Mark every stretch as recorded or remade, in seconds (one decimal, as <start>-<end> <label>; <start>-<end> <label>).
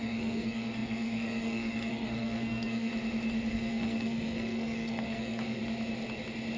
0.0-2.9 remade; 2.9-3.5 recorded; 3.5-5.6 remade; 5.6-6.6 recorded